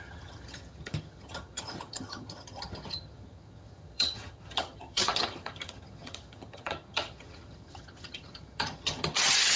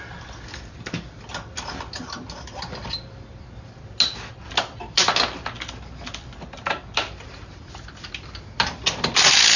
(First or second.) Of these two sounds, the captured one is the second